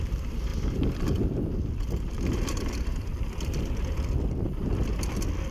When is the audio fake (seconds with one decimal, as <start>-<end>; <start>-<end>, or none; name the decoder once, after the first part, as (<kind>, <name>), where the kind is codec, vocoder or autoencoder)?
0.0-5.5 (vocoder, BigVGAN v2)